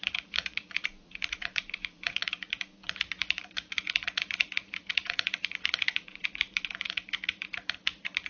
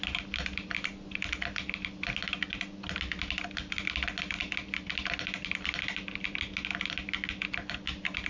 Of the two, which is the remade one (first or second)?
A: first